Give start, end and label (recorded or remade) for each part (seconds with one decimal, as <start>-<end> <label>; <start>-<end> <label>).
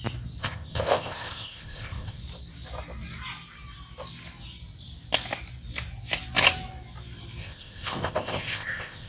0.0-0.4 recorded; 0.4-2.2 remade; 2.2-7.4 recorded; 7.4-9.1 remade